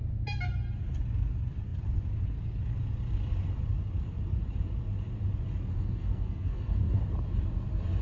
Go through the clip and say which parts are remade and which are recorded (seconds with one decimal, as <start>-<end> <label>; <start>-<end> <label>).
0.0-5.7 recorded; 5.7-7.0 remade; 7.0-8.0 recorded